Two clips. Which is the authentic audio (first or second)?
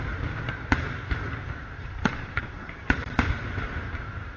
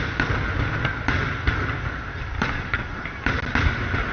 second